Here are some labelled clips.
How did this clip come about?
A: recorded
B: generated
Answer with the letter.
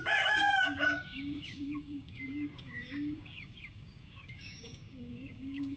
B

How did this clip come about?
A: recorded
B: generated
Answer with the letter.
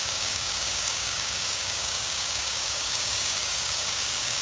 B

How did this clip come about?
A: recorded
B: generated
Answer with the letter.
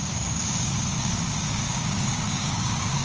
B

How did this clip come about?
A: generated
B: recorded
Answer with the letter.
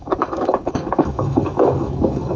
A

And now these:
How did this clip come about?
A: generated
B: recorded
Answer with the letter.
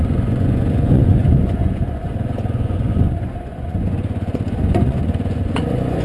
A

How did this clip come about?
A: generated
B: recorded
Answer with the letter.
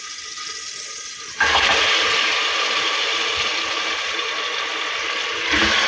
B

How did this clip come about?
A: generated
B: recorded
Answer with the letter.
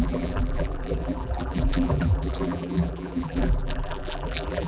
A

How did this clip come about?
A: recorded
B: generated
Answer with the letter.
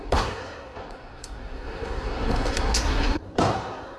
B